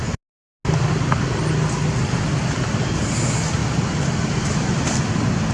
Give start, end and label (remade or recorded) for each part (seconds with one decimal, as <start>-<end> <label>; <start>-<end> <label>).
0.0-5.5 recorded